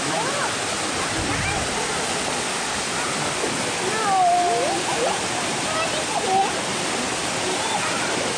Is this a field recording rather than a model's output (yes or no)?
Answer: yes